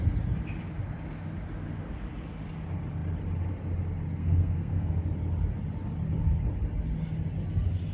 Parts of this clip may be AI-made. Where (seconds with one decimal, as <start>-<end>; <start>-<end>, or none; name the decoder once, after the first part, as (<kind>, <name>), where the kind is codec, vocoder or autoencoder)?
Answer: 4.2-5.0 (codec, SNAC)